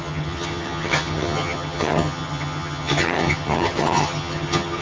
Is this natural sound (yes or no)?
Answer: no